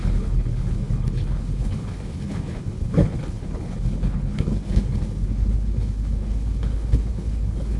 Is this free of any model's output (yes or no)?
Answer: no